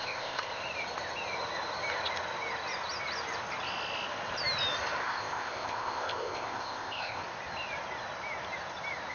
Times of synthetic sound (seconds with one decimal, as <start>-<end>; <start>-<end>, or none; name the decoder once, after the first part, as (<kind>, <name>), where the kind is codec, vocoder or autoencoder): 0.0-0.6 (codec, ZipCodec); 5.0-7.2